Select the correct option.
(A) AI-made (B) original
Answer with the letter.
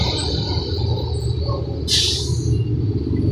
B